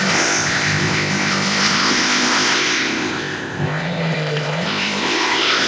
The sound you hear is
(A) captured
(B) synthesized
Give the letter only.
B